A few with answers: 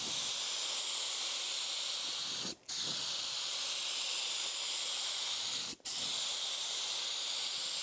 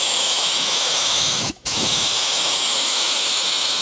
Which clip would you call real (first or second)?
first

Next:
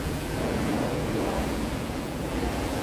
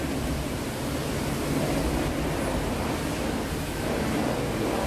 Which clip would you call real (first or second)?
second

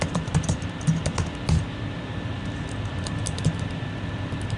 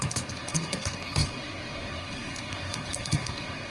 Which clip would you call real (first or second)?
first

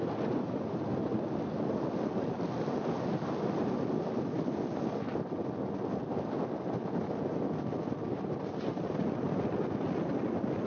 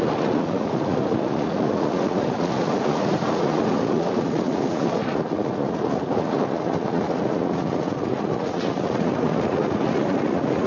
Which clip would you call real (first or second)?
first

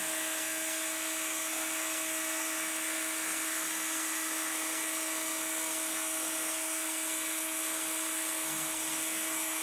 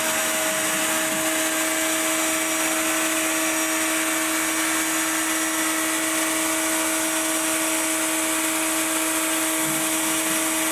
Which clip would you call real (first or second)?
second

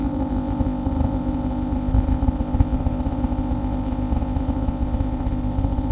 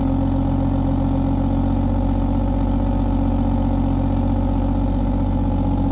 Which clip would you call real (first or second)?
second